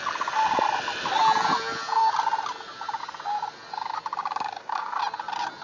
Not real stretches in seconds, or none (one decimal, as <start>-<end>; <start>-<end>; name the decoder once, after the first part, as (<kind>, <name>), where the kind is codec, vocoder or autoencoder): 4.2-5.0 (codec, DAC)